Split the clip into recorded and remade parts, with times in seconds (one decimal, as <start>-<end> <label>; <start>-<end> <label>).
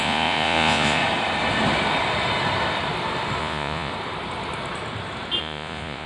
0.0-1.0 remade; 1.0-3.4 recorded; 3.4-3.9 remade; 3.9-5.4 recorded; 5.4-6.1 remade